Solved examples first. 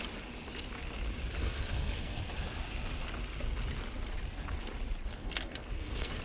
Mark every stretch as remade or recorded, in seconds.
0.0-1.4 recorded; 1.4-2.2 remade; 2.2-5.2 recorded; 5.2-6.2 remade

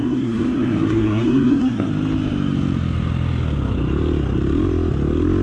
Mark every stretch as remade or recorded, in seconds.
0.0-1.9 remade; 1.9-5.4 recorded

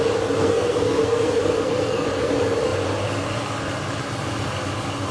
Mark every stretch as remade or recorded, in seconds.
0.0-0.4 recorded; 0.4-2.3 remade; 2.3-5.1 recorded

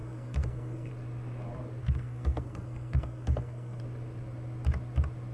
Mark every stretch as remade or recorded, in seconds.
0.0-0.9 remade; 0.9-1.8 recorded; 1.8-3.8 remade; 3.8-5.3 recorded

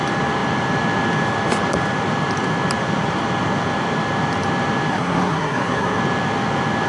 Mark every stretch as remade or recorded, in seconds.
0.0-4.9 recorded; 4.9-6.0 remade; 6.0-6.9 recorded